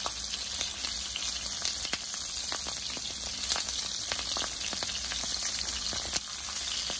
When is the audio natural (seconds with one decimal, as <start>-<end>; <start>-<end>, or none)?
0.0-7.0